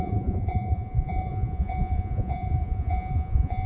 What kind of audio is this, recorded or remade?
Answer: remade